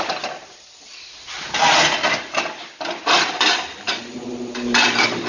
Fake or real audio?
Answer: real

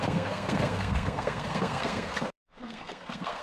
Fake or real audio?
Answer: fake